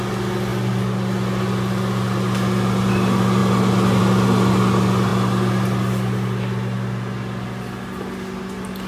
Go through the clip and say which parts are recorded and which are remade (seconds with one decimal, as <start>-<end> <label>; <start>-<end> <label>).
0.0-8.9 recorded